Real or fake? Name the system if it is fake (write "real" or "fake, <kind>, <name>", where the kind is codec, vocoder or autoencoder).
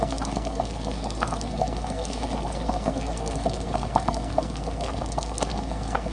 fake, codec, SNAC